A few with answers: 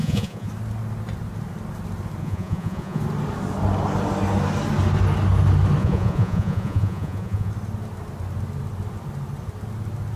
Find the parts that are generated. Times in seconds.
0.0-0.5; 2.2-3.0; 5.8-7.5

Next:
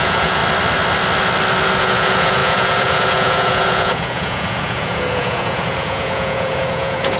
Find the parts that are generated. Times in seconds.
0.0-0.4; 1.8-7.2

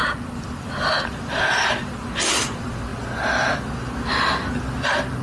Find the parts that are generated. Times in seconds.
none